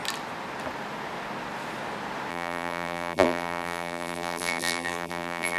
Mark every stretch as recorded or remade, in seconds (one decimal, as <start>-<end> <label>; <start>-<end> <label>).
0.0-2.3 recorded; 2.3-5.6 remade